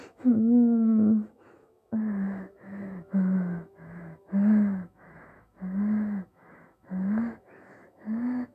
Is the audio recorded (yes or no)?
no